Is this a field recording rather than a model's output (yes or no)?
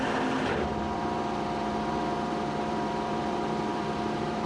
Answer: no